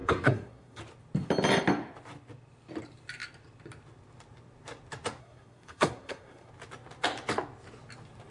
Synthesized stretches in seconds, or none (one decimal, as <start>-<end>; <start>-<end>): 0.0-0.8; 5.2-6.5

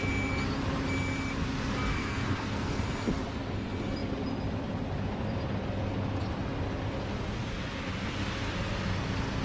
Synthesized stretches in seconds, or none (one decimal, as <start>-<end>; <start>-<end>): 1.9-2.8

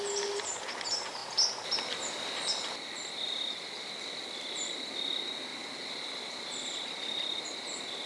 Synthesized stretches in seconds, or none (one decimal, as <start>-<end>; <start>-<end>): 1.2-5.0; 5.5-7.4

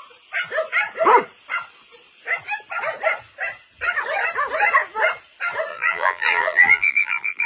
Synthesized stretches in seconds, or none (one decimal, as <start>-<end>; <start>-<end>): 5.7-7.5